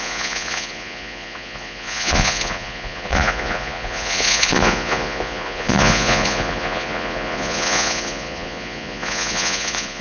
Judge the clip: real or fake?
fake